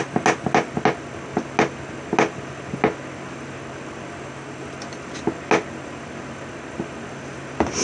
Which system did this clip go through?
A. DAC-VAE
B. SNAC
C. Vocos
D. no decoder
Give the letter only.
D